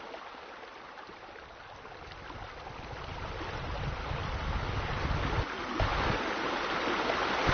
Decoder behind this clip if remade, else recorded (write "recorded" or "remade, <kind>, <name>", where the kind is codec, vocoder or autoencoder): recorded